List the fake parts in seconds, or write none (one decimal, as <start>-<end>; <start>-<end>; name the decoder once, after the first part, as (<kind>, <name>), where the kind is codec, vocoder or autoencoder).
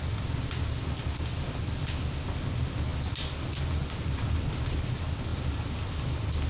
none